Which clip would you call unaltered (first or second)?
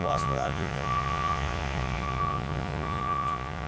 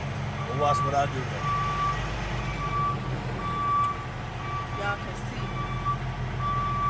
second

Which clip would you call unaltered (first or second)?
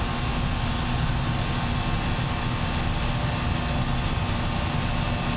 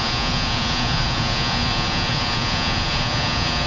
first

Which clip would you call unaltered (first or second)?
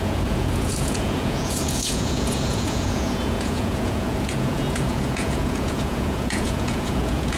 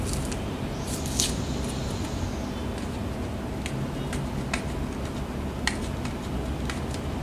second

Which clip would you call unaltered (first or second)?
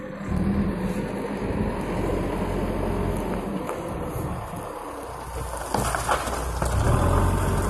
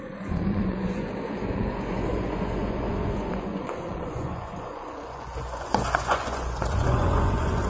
first